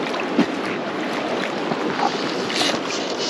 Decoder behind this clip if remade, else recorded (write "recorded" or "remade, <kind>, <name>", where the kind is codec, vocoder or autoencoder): recorded